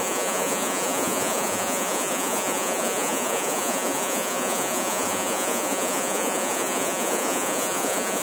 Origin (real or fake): fake